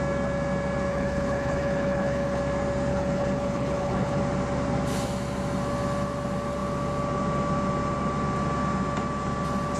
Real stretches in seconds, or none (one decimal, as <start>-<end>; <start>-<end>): 0.0-0.9; 2.4-2.9; 4.2-9.8